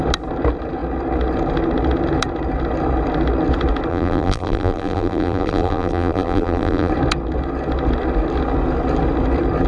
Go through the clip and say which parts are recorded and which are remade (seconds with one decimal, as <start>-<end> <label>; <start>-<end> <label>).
0.0-3.9 recorded; 3.9-6.9 remade; 6.9-9.7 recorded